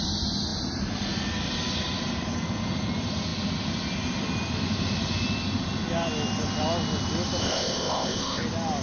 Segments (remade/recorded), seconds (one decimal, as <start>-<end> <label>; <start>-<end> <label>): 0.0-7.4 recorded; 7.4-8.4 remade; 8.4-8.8 recorded